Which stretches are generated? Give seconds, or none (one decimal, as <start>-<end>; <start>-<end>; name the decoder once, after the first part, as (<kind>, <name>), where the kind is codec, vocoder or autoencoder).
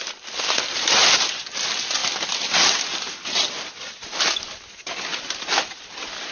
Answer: none